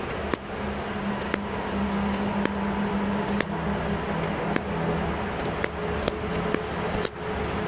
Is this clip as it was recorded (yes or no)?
yes